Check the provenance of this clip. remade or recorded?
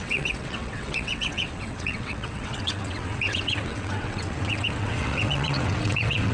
remade